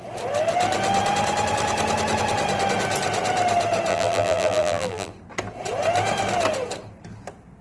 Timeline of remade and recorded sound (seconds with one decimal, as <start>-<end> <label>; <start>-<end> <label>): 0.0-3.9 recorded; 3.9-5.1 remade; 5.1-7.6 recorded